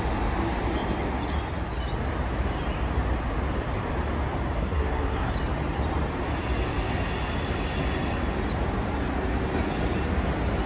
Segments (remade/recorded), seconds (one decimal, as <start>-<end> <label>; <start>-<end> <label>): 0.0-4.6 recorded; 4.6-5.3 remade; 5.3-10.7 recorded